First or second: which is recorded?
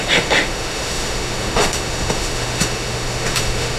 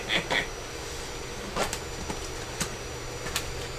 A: second